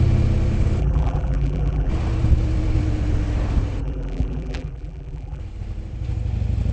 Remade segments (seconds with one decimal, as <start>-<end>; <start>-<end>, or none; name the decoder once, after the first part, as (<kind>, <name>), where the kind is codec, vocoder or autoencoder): 0.8-1.9 (vocoder, BigVGAN v2); 3.8-5.4

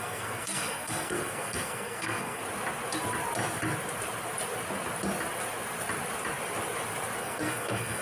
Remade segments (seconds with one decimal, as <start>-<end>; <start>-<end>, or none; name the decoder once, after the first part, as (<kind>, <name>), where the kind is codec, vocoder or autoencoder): 0.0-2.4 (codec, SNAC); 7.2-8.0

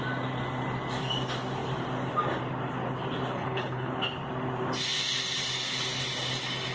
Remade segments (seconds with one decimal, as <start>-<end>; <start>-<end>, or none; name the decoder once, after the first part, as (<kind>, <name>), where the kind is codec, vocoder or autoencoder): 3.3-3.9 (codec, HILCodec)

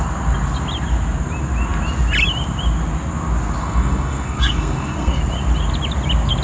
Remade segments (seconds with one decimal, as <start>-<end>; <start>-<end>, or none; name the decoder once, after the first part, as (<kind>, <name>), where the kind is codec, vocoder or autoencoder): 3.6-5.2 (codec, SNAC)

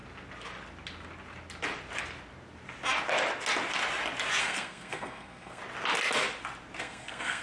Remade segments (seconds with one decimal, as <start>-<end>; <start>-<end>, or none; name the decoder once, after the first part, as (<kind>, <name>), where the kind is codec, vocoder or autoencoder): 4.4-5.6 (codec, SNAC); 6.8-7.4

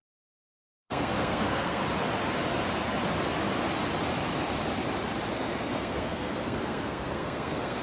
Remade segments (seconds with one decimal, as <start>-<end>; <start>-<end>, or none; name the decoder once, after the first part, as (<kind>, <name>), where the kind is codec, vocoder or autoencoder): 0.0-1.8 (codec, SNAC); 5.3-7.8